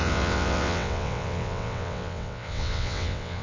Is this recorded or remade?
remade